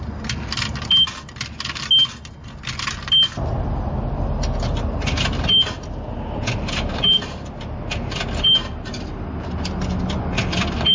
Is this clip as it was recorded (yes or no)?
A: yes